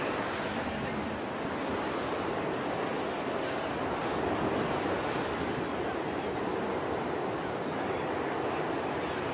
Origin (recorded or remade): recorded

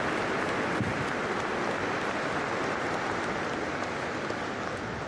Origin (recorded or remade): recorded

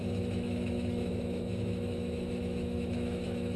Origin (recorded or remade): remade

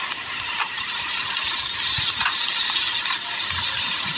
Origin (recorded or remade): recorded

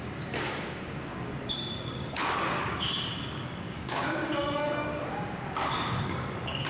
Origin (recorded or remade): remade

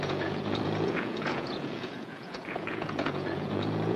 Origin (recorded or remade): remade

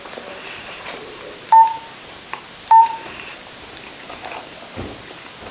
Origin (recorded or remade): remade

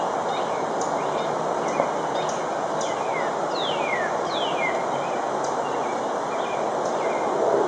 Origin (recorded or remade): recorded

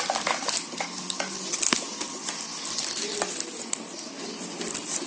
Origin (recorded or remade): recorded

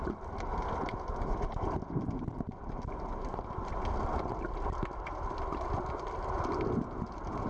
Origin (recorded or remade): recorded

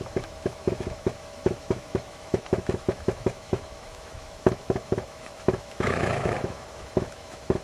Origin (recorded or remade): remade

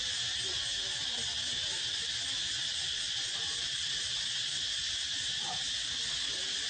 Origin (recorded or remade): recorded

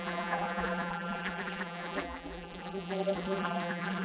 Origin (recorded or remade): remade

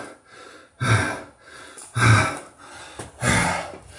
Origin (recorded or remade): recorded